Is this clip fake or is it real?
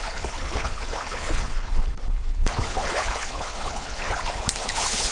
fake